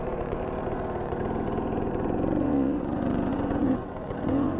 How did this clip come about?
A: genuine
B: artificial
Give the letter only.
B